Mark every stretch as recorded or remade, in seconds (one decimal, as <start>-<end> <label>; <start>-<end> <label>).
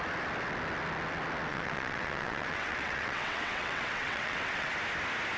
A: 0.0-1.5 recorded; 1.5-4.7 remade; 4.7-5.4 recorded